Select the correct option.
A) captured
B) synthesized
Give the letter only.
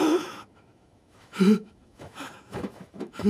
B